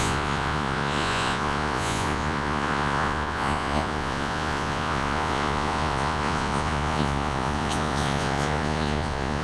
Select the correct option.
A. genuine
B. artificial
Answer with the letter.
B